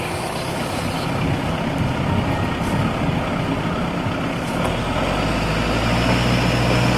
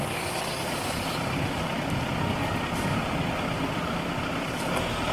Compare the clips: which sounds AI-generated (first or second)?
second